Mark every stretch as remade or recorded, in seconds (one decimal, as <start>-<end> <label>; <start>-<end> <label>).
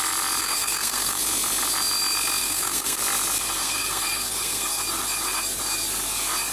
0.0-0.4 recorded; 0.4-1.2 remade; 1.2-2.4 recorded; 2.4-3.0 remade; 3.0-3.6 recorded; 3.6-4.8 remade; 4.8-6.5 recorded